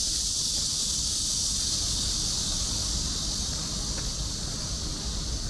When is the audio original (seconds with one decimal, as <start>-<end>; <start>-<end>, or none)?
0.0-5.5